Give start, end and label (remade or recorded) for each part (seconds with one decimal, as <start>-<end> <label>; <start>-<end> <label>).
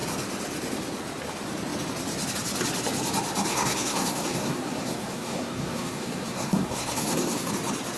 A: 0.0-3.5 recorded; 3.5-7.5 remade; 7.5-8.0 recorded